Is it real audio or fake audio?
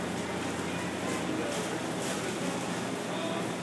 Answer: real